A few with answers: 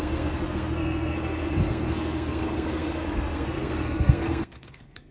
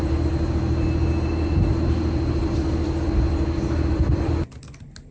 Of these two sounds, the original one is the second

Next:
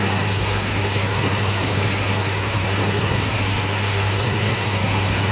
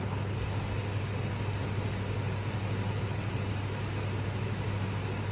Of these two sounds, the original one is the second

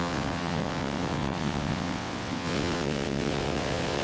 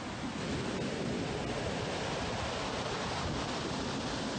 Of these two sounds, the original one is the second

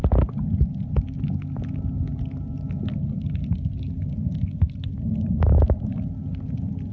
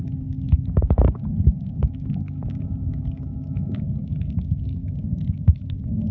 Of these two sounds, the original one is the first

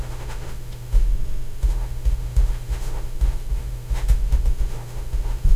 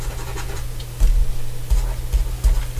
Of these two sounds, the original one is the second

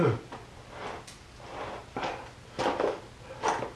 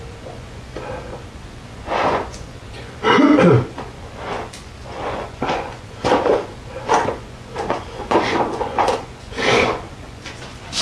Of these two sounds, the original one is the first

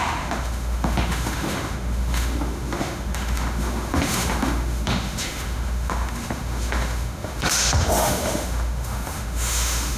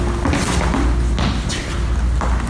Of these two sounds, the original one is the second